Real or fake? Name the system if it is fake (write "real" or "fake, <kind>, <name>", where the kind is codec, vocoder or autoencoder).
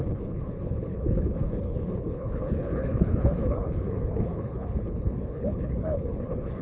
fake, codec, HILCodec